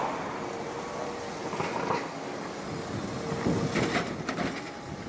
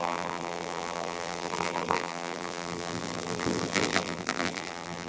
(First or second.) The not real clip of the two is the second